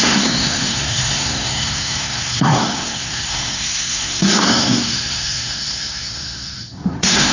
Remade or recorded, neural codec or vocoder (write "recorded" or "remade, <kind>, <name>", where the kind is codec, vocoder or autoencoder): remade, codec, SNAC